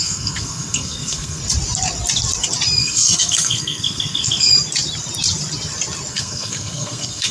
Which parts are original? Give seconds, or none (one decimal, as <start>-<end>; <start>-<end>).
1.4-2.8; 4.5-6.1